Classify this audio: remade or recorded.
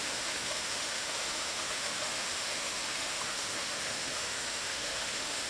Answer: remade